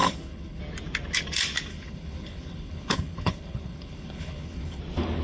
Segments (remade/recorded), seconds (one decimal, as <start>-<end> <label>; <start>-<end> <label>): 0.0-0.6 remade; 0.6-1.7 recorded; 1.7-4.8 remade; 4.8-5.2 recorded